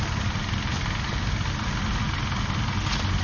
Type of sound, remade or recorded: recorded